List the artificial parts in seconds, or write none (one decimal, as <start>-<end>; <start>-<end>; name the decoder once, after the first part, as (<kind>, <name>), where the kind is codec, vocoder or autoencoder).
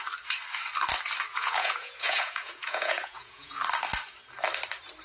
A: 1.3-3.6 (vocoder, Vocos)